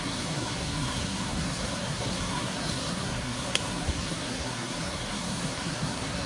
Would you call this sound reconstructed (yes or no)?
yes